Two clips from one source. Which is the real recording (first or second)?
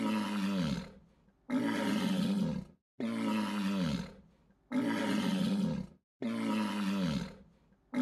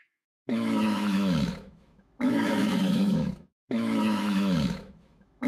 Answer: first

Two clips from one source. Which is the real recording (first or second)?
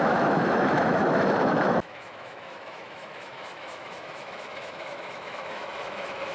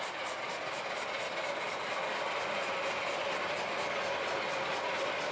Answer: second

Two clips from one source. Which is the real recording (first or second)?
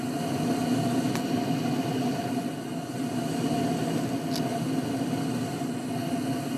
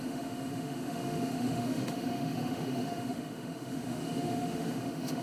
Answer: first